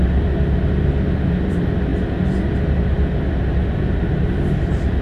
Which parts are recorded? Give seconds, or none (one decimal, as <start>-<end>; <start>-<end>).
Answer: 0.0-5.0